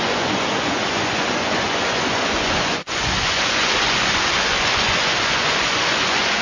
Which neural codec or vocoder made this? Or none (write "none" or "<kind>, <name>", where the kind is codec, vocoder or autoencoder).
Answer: vocoder, Vocos